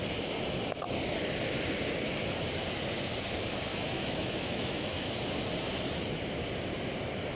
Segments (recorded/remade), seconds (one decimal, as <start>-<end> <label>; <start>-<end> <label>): 0.0-3.7 recorded; 3.7-5.1 remade; 5.1-7.4 recorded